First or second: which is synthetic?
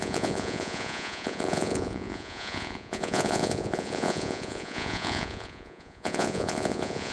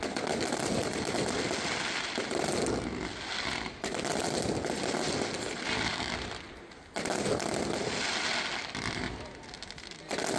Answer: first